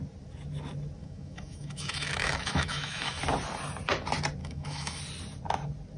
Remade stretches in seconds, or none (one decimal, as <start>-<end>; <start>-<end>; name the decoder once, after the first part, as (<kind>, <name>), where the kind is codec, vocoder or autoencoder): 1.0-3.2 (autoencoder, DAC-VAE); 4.4-5.0

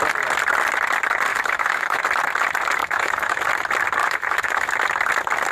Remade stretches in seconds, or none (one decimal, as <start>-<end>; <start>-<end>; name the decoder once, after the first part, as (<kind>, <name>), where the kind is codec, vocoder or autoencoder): 1.3-2.0 (autoencoder, DAC-VAE); 2.8-3.4; 4.0-4.7